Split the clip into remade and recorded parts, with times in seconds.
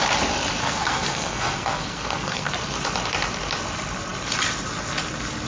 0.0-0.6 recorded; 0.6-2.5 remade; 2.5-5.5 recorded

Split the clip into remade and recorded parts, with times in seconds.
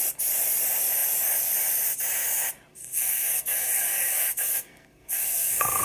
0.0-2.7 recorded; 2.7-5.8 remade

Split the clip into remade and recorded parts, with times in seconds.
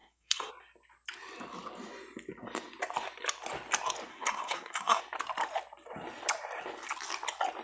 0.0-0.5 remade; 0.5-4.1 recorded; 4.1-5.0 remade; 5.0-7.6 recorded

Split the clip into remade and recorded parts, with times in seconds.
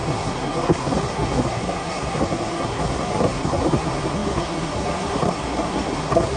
0.0-6.4 remade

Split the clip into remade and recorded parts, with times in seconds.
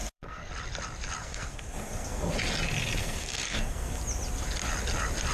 0.0-0.5 remade; 0.5-1.2 recorded; 1.2-2.3 remade; 2.3-3.0 recorded; 3.0-4.0 remade; 4.0-5.3 recorded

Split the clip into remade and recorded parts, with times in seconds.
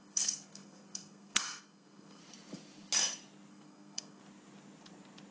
0.0-2.2 remade; 2.2-3.5 recorded; 3.5-4.2 remade; 4.2-5.3 recorded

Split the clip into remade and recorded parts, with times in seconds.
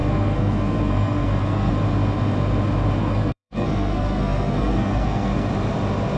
0.0-1.7 remade; 1.7-3.0 recorded; 3.0-5.5 remade; 5.5-6.2 recorded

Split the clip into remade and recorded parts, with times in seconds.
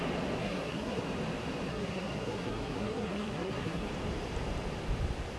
0.0-0.4 recorded; 0.4-1.0 remade; 1.0-1.7 recorded; 1.7-3.9 remade; 3.9-5.4 recorded